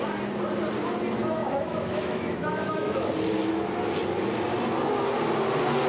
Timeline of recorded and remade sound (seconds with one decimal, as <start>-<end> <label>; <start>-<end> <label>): 0.0-1.4 recorded; 1.4-3.1 remade; 3.1-5.9 recorded